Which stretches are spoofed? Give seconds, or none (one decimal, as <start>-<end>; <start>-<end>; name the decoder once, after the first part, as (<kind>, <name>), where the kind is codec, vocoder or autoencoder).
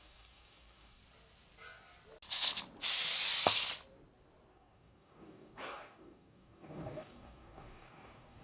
0.0-1.0 (codec, DAC); 4.5-8.4